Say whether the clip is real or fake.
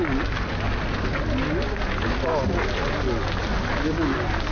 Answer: real